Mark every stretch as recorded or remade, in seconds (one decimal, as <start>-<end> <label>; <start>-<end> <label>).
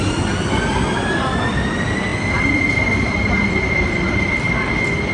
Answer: 0.0-2.1 recorded; 2.1-4.5 remade; 4.5-5.1 recorded